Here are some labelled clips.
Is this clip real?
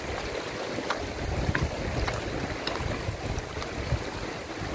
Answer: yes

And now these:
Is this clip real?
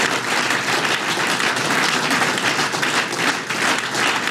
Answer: yes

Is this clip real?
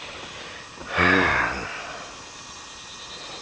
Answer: yes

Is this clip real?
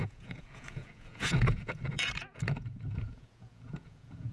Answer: no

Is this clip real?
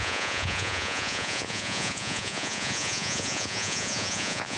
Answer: no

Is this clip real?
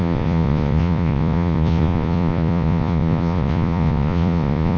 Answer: no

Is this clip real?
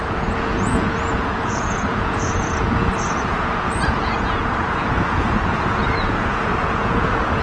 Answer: no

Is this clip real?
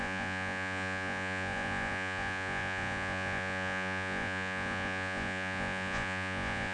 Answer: no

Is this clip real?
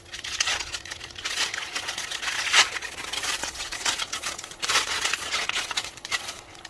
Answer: no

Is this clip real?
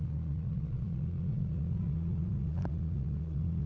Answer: no